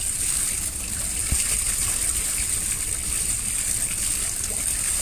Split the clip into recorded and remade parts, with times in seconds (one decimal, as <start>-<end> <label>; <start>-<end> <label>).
0.0-5.0 recorded